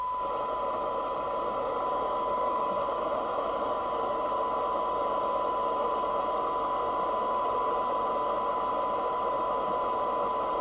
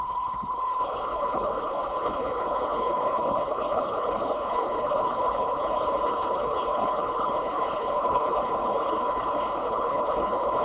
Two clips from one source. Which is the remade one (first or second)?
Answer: second